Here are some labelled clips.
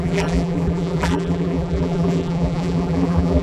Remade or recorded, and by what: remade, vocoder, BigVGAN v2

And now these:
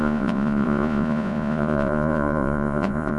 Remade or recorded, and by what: remade, vocoder, Vocos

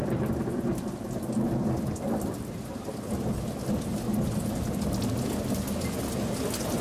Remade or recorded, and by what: recorded